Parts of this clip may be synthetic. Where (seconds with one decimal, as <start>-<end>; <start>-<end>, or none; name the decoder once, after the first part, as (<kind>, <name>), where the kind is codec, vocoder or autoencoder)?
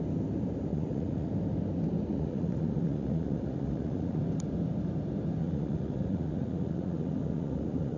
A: 0.7-1.3 (vocoder, Vocos); 2.1-4.2; 5.4-8.0